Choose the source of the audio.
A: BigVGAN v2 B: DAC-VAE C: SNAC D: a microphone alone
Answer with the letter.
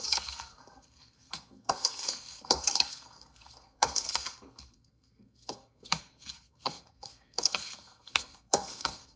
C